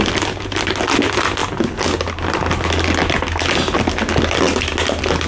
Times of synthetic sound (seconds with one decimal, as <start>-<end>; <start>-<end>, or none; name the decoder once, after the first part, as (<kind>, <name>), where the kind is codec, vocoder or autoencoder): none